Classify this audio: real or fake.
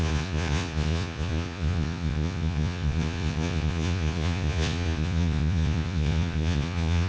fake